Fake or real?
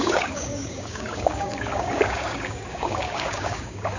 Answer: fake